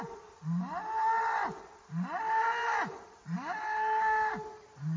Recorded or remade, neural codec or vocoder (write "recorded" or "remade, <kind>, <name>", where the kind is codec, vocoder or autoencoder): recorded